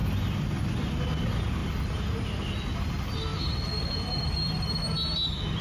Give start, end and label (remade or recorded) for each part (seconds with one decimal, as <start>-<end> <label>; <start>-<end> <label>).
0.0-5.6 recorded